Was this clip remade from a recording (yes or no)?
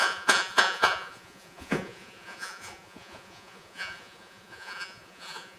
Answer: yes